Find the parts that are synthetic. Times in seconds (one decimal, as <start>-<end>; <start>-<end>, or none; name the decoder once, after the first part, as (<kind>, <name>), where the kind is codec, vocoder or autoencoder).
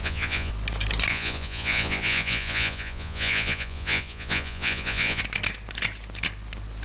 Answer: 0.0-0.5 (vocoder, Vocos); 1.1-5.2